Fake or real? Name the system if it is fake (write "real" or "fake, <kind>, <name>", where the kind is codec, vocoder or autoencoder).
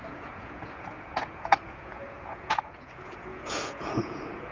fake, vocoder, Vocos